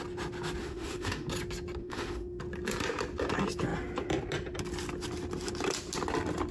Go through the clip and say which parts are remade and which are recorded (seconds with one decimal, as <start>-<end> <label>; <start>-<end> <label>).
0.0-0.6 recorded; 0.6-1.3 remade; 1.3-1.8 recorded; 1.8-2.4 remade; 2.4-6.5 recorded